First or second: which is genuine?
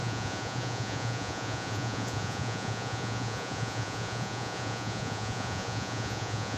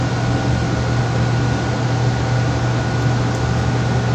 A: second